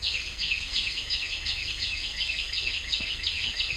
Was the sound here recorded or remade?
remade